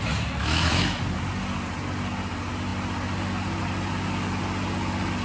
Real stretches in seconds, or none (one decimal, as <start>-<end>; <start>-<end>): 0.0-0.4; 1.0-5.2